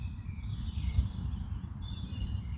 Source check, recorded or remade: remade